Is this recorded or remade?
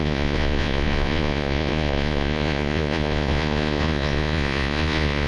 remade